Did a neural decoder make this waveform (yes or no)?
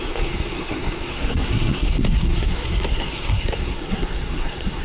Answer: yes